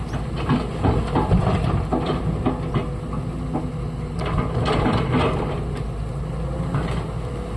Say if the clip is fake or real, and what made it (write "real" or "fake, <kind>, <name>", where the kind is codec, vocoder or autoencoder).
real